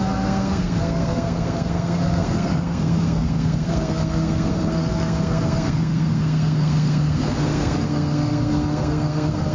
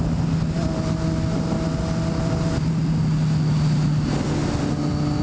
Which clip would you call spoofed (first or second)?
first